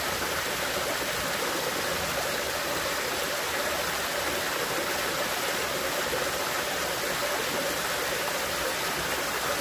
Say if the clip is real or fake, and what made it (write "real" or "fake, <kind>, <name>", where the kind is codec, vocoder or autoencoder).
real